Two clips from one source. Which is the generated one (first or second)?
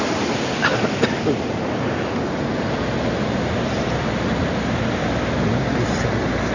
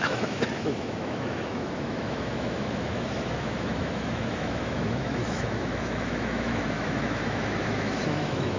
second